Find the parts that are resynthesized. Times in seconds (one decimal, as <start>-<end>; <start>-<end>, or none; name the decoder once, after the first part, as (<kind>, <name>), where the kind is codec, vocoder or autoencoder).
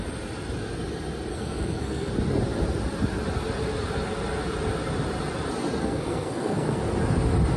1.3-2.1 (codec, SNAC); 5.8-6.8